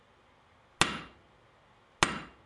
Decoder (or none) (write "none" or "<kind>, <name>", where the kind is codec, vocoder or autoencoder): none